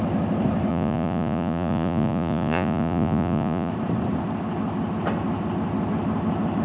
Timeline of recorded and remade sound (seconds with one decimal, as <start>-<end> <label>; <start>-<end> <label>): 0.0-0.7 recorded; 0.7-3.7 remade; 3.7-6.6 recorded